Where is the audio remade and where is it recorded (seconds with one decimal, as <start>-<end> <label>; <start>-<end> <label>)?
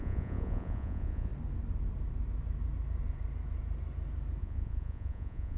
0.0-1.3 remade; 1.3-4.4 recorded; 4.4-5.6 remade